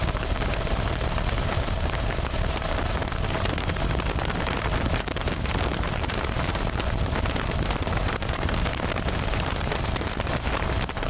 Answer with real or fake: fake